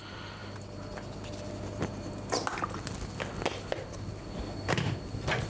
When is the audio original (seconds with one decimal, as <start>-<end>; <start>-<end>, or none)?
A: 0.0-5.5